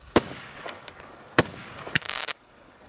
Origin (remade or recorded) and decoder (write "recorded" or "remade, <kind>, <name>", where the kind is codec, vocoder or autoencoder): remade, codec, DAC